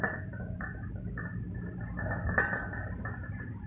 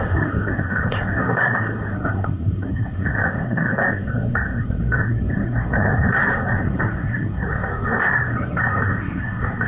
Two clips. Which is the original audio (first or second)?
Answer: first